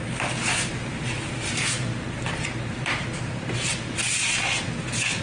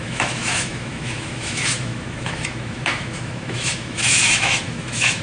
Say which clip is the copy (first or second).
second